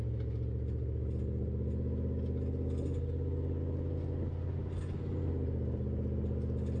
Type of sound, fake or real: real